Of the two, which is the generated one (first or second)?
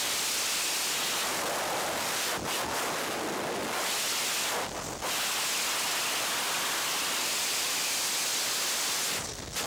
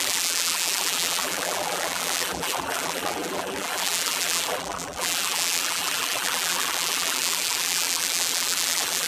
second